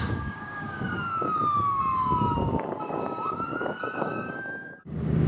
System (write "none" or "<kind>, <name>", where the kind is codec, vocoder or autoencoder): codec, DAC